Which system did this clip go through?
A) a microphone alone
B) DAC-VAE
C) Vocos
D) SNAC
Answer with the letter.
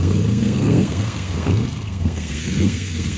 D